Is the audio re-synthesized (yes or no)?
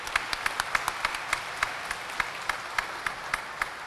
no